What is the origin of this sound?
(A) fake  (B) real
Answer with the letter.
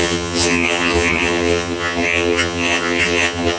A